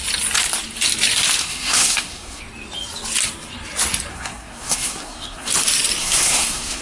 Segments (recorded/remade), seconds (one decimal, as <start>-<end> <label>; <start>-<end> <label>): 0.0-1.4 recorded; 1.4-2.4 remade; 2.4-4.1 recorded; 4.1-5.5 remade; 5.5-6.0 recorded; 6.0-6.8 remade